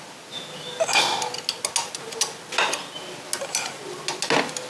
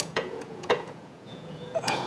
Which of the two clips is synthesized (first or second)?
second